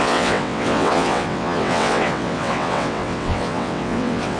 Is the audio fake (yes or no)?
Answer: yes